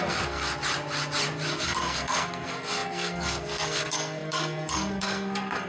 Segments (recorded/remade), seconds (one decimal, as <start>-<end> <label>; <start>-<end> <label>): 0.0-0.4 remade; 0.4-1.5 recorded; 1.5-5.7 remade